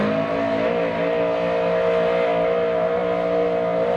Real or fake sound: real